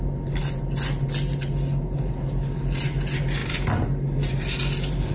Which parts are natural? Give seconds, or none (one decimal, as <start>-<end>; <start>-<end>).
0.0-5.1